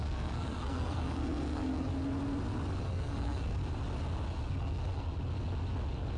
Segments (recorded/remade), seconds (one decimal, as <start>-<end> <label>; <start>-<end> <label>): 0.0-1.9 remade; 1.9-2.8 recorded; 2.8-3.6 remade; 3.6-4.5 recorded; 4.5-5.1 remade; 5.1-6.2 recorded